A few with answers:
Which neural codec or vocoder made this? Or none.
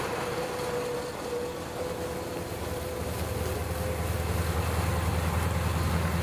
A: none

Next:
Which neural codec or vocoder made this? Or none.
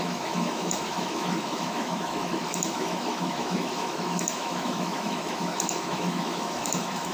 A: autoencoder, DAC-VAE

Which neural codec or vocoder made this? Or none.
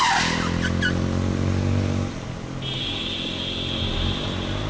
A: none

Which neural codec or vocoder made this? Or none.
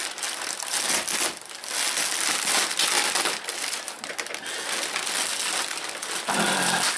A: none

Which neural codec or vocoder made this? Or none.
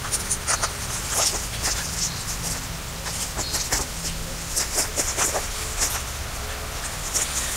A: none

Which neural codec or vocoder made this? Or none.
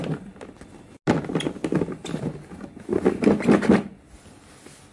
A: none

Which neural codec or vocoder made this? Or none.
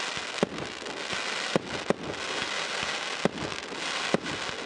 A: none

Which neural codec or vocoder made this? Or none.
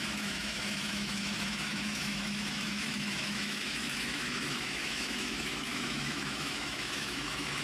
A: autoencoder, DAC-VAE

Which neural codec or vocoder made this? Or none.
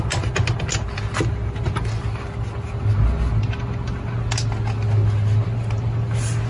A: none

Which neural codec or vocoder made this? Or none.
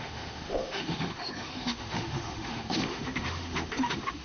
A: autoencoder, DAC-VAE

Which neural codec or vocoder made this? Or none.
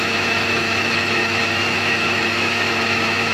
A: autoencoder, DAC-VAE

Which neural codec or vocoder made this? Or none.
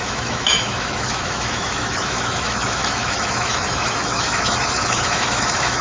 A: autoencoder, DAC-VAE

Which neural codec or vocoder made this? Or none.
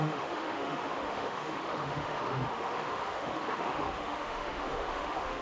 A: autoencoder, DAC-VAE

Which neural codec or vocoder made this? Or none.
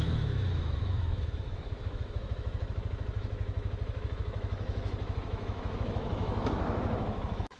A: autoencoder, DAC-VAE